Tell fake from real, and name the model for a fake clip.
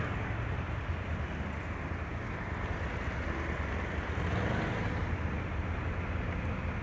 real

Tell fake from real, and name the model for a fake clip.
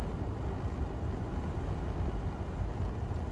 real